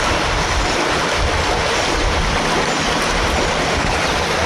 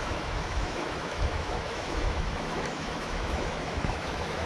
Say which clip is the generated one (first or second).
second